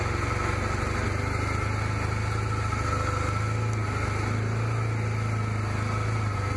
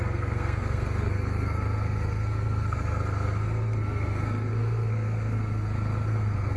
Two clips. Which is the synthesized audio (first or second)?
second